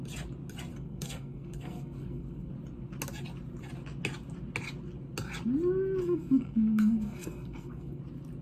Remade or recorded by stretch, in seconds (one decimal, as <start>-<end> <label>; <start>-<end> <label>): 0.0-0.7 recorded; 0.7-2.5 remade; 2.5-6.0 recorded; 6.0-8.0 remade; 8.0-8.4 recorded